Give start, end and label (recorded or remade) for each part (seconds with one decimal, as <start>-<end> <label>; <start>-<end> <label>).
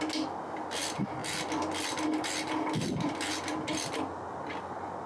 0.0-5.1 recorded